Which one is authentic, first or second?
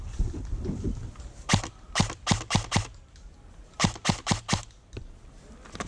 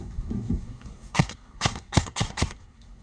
first